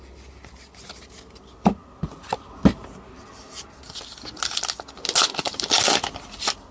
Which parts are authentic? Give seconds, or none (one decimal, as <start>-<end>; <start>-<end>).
0.0-6.7